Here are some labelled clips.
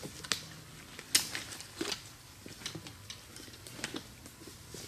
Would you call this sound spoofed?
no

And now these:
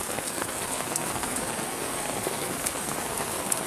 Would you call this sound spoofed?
yes